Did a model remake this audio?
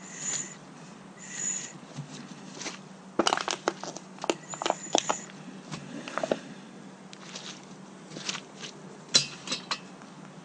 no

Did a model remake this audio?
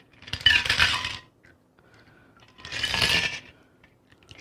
no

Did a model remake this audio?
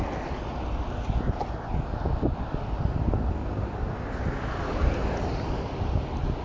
no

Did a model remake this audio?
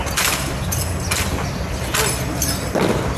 no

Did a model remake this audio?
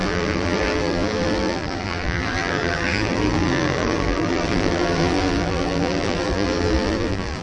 yes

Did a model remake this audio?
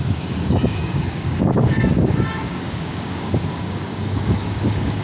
yes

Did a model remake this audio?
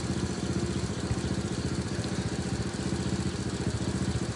no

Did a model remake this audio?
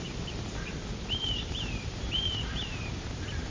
yes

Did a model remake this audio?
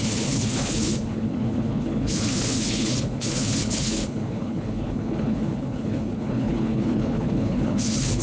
yes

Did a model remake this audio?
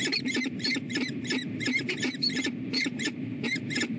yes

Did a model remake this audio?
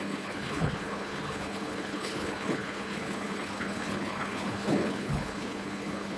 yes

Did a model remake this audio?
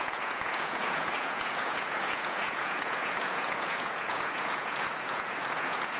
yes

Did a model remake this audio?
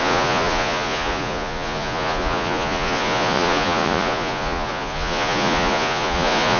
yes